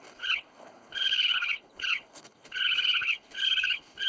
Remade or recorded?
remade